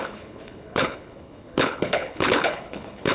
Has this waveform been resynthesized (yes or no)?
yes